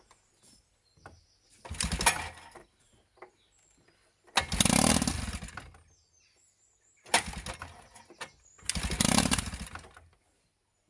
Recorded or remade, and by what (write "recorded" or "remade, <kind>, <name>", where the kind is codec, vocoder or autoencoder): recorded